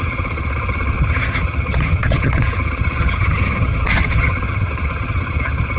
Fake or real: fake